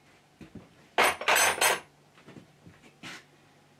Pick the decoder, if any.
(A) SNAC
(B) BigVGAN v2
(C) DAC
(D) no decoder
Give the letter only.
D